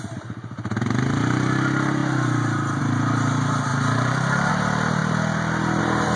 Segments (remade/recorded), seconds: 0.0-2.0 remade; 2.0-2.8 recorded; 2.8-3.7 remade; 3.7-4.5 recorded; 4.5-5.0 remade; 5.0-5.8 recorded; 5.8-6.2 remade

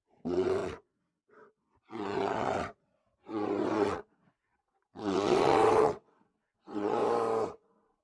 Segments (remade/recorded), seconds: 0.0-7.0 remade; 7.0-8.0 recorded

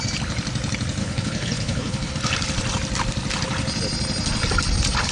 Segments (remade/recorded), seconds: 0.0-1.0 recorded; 1.0-2.1 remade; 2.1-5.1 recorded

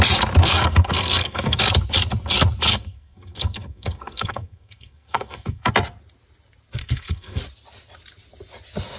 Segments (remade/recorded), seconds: 0.0-0.4 recorded; 0.4-1.6 remade; 1.6-2.7 recorded; 2.7-5.7 remade; 5.7-6.8 recorded; 6.8-7.4 remade; 7.4-9.0 recorded